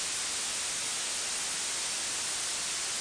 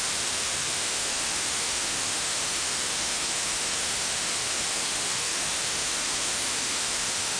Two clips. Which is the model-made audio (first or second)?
second